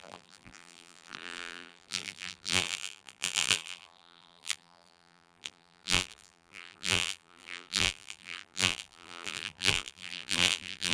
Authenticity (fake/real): fake